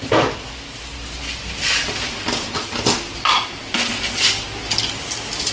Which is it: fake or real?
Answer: real